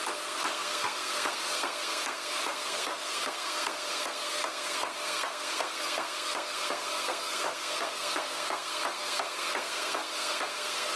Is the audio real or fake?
fake